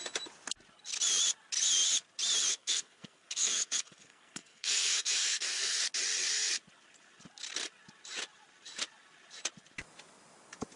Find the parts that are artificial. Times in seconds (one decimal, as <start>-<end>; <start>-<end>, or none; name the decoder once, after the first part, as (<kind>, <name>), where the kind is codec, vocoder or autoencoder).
2.5-5.8 (codec, SNAC)